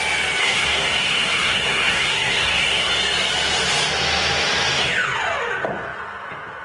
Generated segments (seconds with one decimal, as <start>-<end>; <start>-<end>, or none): 0.4-2.9